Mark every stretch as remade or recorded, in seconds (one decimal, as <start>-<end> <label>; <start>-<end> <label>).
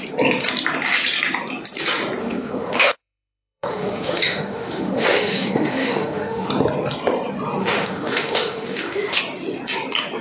0.0-2.2 recorded; 2.2-6.5 remade; 6.5-7.6 recorded; 7.6-9.2 remade; 9.2-10.2 recorded